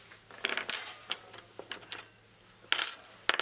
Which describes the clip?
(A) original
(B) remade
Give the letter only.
A